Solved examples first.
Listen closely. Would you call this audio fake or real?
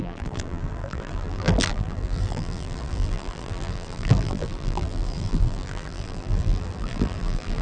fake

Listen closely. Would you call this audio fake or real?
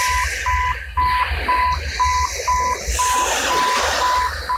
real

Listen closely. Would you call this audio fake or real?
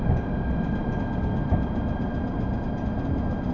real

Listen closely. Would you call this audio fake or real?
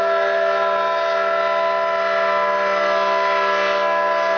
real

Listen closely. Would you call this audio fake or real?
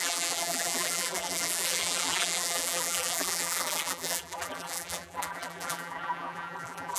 fake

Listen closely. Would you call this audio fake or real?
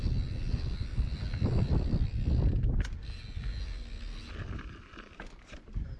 real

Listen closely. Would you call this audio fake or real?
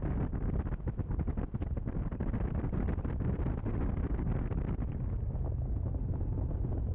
real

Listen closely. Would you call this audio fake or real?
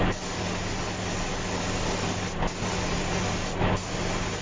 real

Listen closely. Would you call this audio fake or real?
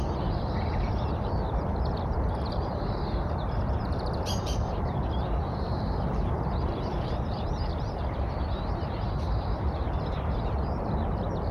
fake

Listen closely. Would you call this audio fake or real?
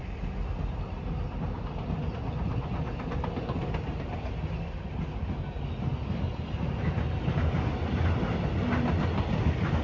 real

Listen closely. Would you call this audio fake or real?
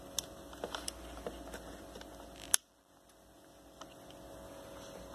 real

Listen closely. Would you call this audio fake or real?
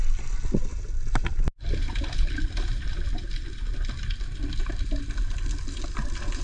real